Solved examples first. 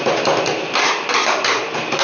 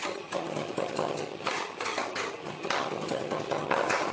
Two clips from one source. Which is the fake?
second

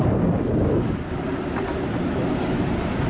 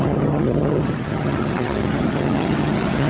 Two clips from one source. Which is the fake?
second